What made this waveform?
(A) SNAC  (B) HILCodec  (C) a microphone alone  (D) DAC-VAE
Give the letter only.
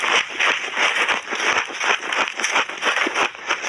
C